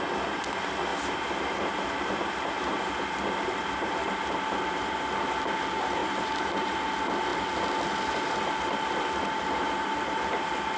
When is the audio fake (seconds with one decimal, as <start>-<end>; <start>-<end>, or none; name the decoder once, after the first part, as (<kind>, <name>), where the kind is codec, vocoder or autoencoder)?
6.0-6.7 (vocoder, BigVGAN v2)